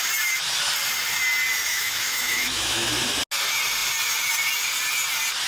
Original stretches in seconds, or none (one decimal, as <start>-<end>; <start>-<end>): 0.0-1.7; 2.9-5.5